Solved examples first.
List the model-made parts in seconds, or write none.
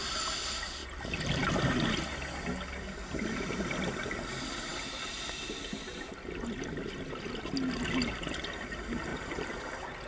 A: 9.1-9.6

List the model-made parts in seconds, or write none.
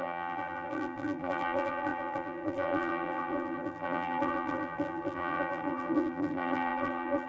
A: 0.0-7.3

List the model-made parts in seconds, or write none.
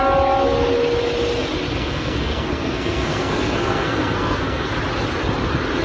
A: 1.7-4.7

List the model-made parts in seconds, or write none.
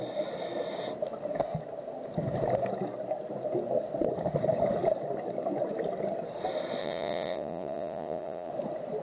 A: 6.8-8.5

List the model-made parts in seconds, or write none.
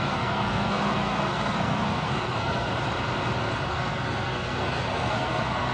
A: 0.0-2.7; 3.7-5.7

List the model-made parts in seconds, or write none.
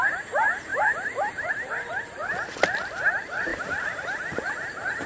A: 0.0-2.2; 2.9-5.1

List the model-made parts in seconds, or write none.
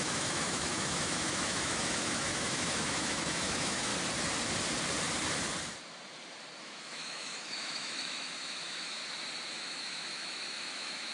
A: 0.0-3.9; 6.6-9.0; 9.5-11.1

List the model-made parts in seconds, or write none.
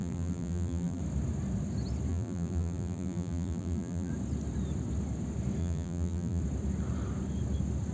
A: 0.0-1.0; 2.1-4.1; 5.6-6.4